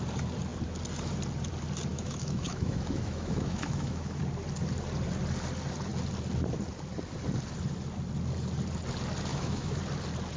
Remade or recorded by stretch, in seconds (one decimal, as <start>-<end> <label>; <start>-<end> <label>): 0.0-1.9 recorded; 1.9-4.2 remade; 4.2-9.3 recorded; 9.3-9.8 remade; 9.8-10.4 recorded